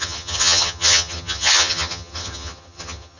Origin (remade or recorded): remade